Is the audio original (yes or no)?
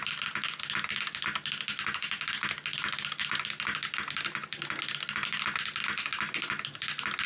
yes